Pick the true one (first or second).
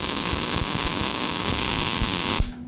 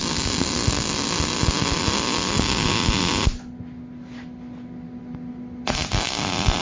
second